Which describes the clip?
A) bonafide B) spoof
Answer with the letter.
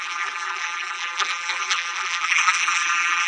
B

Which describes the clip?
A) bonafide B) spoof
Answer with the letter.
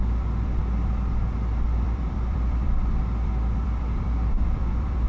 B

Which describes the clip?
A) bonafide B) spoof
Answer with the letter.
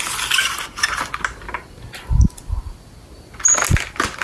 A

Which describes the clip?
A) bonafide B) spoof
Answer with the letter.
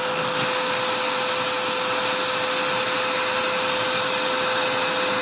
A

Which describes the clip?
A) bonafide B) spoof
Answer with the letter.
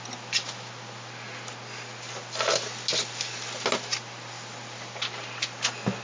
A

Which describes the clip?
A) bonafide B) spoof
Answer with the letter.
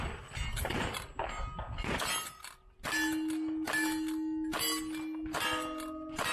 A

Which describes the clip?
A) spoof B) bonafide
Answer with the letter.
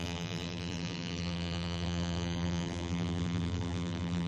A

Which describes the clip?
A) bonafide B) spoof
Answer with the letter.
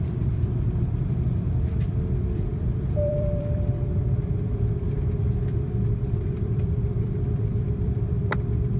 B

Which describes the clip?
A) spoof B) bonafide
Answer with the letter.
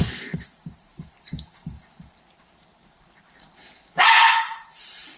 A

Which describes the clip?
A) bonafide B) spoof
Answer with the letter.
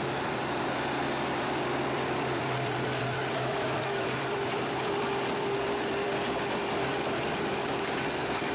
B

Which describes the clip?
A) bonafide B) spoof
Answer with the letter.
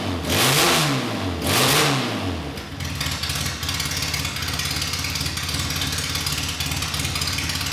A